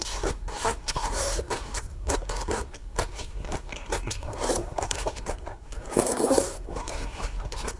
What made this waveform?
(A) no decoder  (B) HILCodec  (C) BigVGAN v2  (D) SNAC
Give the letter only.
D